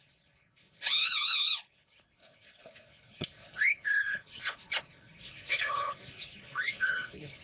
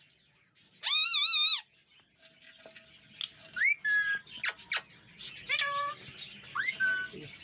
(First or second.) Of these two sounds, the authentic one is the second